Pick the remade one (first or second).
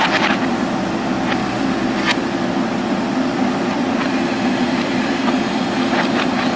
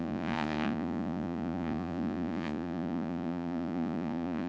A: second